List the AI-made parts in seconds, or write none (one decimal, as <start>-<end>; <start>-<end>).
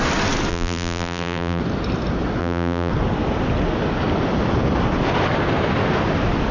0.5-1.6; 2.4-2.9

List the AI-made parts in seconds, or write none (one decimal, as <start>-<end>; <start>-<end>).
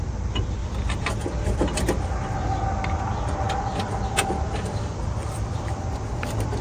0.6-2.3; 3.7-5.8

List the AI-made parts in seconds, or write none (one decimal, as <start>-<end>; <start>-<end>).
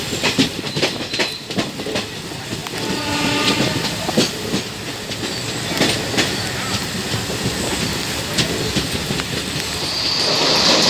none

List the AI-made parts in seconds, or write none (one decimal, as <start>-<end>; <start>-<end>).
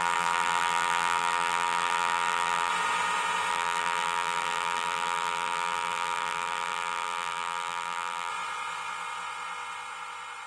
0.0-2.7; 3.5-8.3